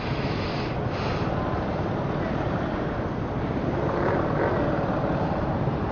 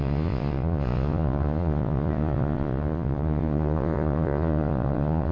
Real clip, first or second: first